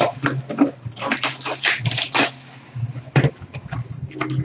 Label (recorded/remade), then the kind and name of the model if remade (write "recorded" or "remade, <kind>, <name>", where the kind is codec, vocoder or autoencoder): recorded